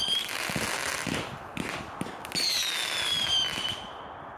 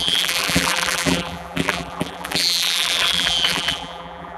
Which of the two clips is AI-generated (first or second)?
second